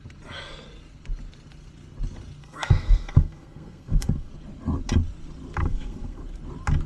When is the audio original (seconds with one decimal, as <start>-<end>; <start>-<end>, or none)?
0.0-2.4; 4.3-5.6; 6.2-6.9